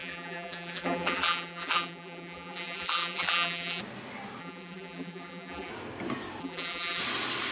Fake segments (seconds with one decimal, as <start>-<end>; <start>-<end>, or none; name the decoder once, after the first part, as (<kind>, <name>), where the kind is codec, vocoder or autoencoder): 0.0-3.8 (vocoder, BigVGAN v2); 4.4-5.7; 6.4-7.0